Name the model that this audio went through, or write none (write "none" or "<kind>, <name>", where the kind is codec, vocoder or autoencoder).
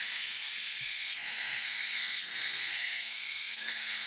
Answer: codec, SNAC